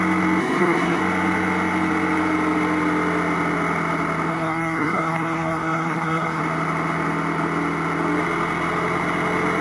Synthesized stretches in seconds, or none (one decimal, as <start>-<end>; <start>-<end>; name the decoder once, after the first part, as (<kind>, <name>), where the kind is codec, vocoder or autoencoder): 0.4-1.0 (codec, SNAC); 4.3-6.4

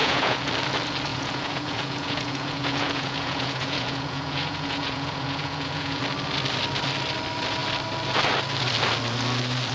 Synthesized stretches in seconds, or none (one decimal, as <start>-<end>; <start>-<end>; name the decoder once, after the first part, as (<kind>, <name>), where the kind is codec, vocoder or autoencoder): 0.0-0.5 (vocoder, Vocos); 1.1-6.0

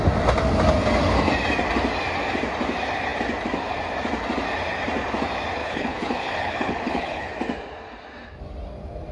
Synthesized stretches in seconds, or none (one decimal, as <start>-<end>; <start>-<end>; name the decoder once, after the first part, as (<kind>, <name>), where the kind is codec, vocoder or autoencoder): 5.6-7.3 (codec, HILCodec)

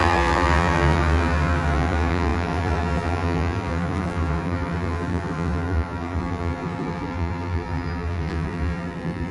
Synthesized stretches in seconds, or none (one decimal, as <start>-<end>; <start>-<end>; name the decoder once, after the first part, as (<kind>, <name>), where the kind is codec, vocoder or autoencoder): 0.0-9.3 (vocoder, BigVGAN v2)

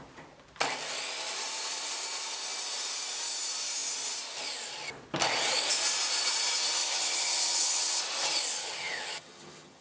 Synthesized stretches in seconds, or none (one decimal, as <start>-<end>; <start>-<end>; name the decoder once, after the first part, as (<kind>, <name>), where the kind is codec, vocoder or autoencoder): 6.8-8.0 (vocoder, HiFi-GAN); 8.6-9.8

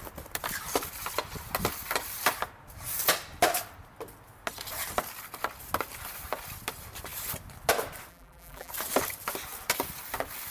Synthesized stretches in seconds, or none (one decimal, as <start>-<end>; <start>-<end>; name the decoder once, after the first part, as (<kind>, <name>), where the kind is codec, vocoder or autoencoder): 8.1-8.7 (vocoder, BigVGAN v2)

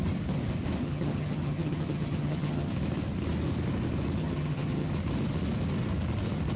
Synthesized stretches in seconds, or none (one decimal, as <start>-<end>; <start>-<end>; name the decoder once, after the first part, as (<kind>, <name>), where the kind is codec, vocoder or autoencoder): 0.8-2.7 (vocoder, HiFi-GAN); 4.2-4.9

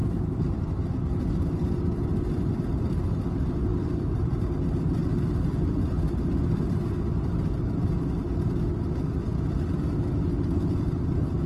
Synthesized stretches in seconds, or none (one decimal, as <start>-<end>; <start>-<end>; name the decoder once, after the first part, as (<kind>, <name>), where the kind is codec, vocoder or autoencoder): 3.7-4.5 (vocoder, BigVGAN v2)